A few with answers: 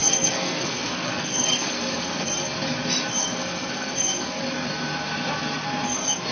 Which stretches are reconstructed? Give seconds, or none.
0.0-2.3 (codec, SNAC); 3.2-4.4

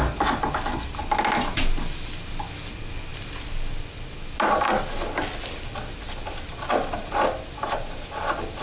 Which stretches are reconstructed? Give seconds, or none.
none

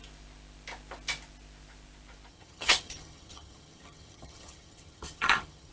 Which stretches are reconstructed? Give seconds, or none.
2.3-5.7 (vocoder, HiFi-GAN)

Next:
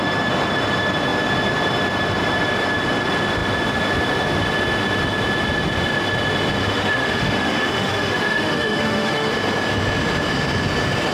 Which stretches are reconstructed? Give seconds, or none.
6.6-9.3 (autoencoder, DAC-VAE)

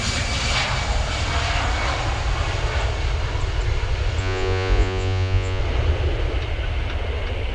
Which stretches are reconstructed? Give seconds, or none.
4.2-5.6 (vocoder, Vocos)

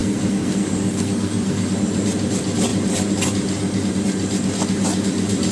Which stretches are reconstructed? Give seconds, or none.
0.0-1.7 (codec, SNAC)

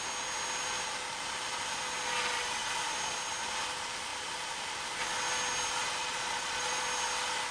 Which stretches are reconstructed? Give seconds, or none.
6.0-6.9 (vocoder, Vocos)